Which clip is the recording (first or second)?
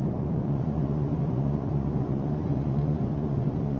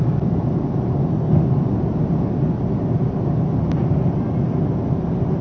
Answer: second